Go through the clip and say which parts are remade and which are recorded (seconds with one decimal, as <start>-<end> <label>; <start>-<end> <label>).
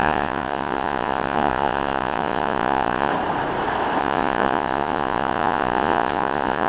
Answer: 0.0-3.1 remade; 3.1-4.0 recorded; 4.0-6.7 remade